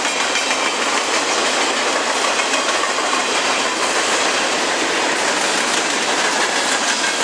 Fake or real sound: real